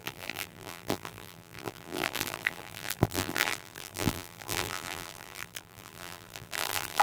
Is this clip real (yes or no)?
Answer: no